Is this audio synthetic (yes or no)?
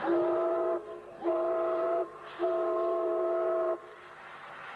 no